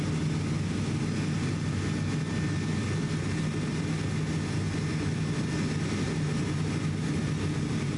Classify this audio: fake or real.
real